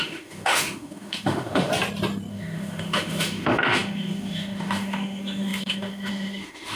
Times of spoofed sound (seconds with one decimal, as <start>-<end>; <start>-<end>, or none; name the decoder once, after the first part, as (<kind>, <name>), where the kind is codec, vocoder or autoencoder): 0.0-1.7 (autoencoder, DAC-VAE); 2.3-6.8